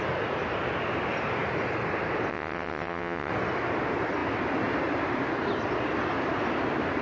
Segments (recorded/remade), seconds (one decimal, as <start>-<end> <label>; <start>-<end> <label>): 0.0-2.3 recorded; 2.3-3.3 remade; 3.3-7.0 recorded